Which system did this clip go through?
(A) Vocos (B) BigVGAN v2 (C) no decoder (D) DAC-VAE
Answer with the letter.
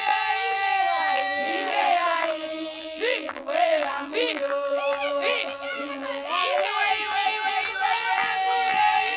B